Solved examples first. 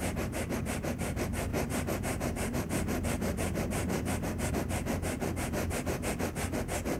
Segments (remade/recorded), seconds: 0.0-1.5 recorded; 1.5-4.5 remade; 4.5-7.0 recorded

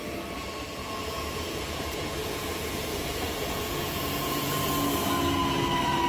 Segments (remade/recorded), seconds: 0.0-0.8 recorded; 0.8-4.5 remade; 4.5-6.1 recorded

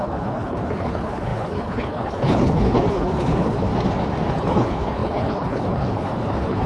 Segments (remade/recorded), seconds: 0.0-3.7 remade; 3.7-4.3 recorded; 4.3-6.7 remade